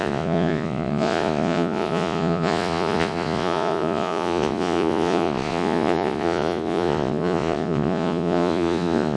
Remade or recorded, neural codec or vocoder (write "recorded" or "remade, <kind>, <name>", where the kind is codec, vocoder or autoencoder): remade, vocoder, Vocos